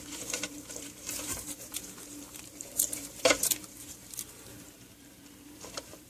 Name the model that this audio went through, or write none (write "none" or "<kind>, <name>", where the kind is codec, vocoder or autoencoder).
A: vocoder, BigVGAN v2